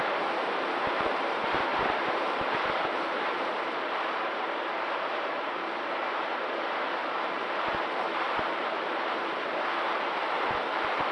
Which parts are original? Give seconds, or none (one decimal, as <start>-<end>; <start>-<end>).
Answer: none